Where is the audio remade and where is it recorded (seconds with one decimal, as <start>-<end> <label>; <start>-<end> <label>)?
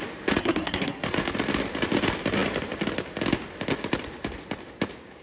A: 0.0-0.4 recorded; 0.4-1.0 remade; 1.0-5.2 recorded